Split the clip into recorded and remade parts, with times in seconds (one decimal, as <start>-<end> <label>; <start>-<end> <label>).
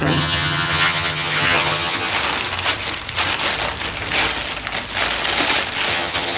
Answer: 0.0-2.1 remade; 2.1-5.9 recorded; 5.9-6.4 remade